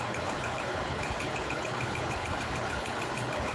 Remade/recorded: remade